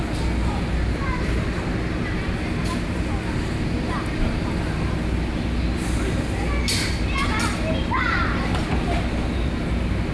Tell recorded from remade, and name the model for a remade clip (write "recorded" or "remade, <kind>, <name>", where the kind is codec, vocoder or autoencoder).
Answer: recorded